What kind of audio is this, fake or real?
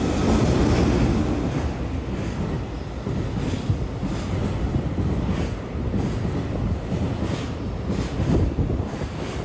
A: real